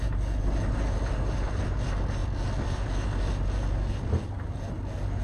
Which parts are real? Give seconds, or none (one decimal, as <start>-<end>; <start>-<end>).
0.0-5.2